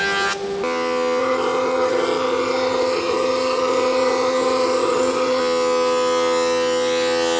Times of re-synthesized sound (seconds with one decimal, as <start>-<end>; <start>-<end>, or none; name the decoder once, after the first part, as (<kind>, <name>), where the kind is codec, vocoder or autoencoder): 1.2-5.4 (vocoder, HiFi-GAN)